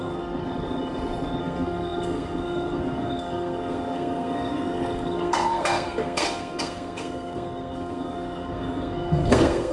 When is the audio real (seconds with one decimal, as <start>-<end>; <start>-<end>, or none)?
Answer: 0.4-1.4